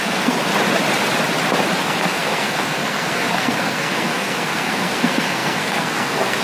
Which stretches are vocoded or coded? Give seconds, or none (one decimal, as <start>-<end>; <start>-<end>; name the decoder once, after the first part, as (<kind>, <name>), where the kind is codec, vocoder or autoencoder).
0.0-0.5 (codec, SNAC); 1.8-6.4